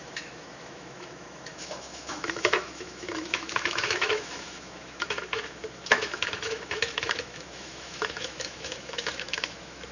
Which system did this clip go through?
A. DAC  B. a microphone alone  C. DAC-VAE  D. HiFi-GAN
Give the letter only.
C